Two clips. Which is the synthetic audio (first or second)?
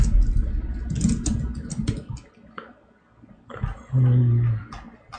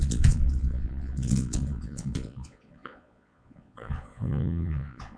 second